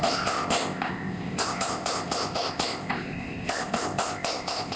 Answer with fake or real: fake